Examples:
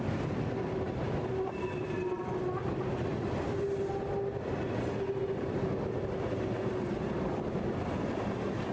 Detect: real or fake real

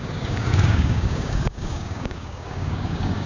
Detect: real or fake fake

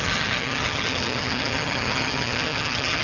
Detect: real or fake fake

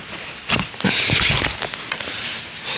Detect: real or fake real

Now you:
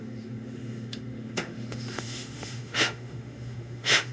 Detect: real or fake fake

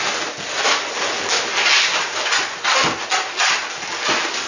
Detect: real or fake real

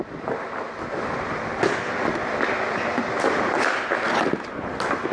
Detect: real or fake real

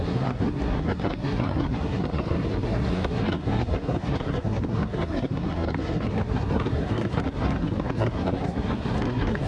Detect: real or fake fake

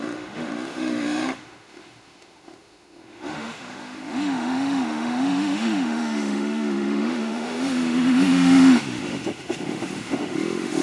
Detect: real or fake fake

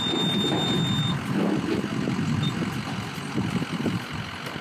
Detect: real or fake real